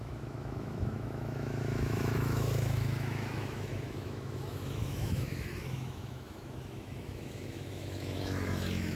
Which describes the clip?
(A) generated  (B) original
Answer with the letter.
A